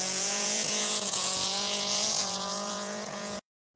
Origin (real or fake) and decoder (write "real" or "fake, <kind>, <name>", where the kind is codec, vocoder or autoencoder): fake, vocoder, Vocos